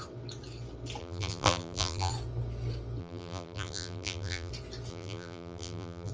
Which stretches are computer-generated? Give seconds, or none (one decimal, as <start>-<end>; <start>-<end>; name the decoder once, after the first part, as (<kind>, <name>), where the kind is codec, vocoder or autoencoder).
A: 1.0-2.1 (vocoder, BigVGAN v2); 3.0-4.5; 4.9-6.1